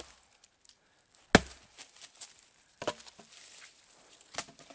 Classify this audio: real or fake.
real